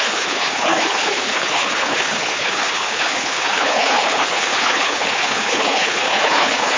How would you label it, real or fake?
fake